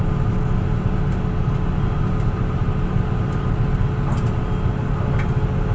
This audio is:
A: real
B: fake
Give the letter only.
A